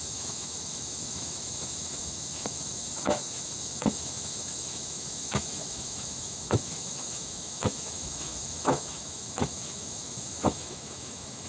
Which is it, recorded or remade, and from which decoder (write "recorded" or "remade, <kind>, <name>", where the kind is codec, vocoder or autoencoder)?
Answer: remade, autoencoder, DAC-VAE